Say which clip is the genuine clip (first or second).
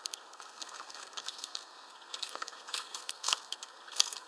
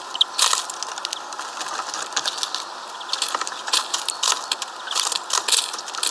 second